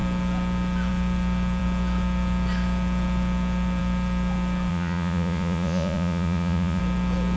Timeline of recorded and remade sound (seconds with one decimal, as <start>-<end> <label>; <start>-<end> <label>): 0.0-4.7 recorded; 4.7-6.8 remade; 6.8-7.4 recorded